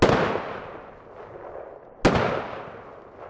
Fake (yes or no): no